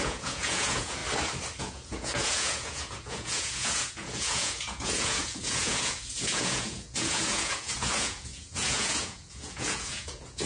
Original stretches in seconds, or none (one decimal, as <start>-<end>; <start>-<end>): 1.0-1.6